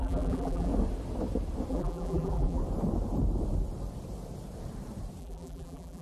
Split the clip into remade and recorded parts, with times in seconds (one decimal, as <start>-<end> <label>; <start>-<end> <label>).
0.0-0.7 remade; 0.7-1.7 recorded; 1.7-2.6 remade; 2.6-5.2 recorded; 5.2-6.0 remade